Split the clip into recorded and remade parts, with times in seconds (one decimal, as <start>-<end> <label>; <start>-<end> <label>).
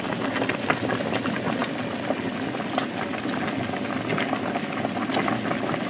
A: 0.0-5.9 recorded